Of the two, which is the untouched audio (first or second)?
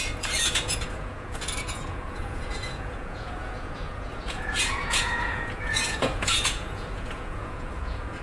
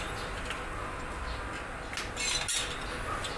second